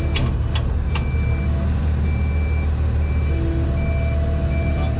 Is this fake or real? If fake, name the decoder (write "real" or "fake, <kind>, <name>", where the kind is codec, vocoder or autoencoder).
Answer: real